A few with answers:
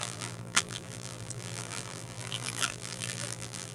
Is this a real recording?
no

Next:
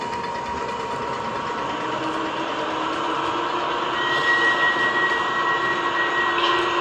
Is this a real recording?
yes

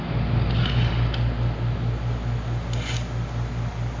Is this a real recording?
yes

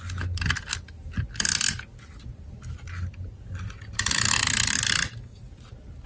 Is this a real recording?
yes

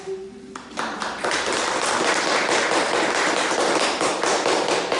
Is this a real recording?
yes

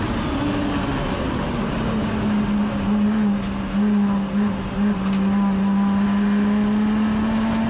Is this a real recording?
yes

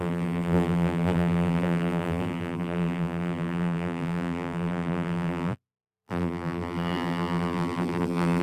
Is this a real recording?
no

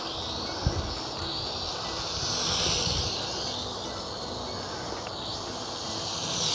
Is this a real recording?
yes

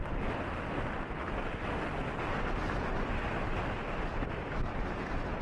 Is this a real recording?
yes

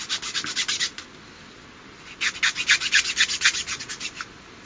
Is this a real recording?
yes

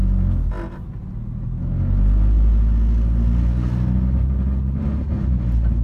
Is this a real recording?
yes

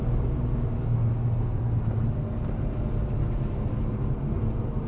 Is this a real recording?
yes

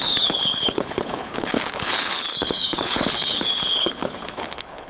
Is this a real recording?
no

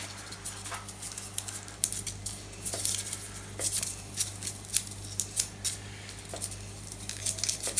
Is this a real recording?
yes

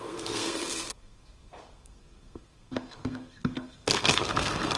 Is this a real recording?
no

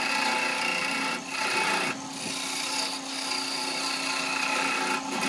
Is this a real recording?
yes